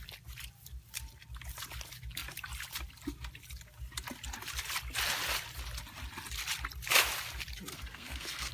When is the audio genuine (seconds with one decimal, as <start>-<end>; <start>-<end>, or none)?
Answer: 0.0-7.7